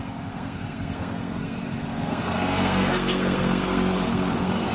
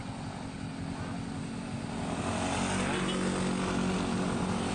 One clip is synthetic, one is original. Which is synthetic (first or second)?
first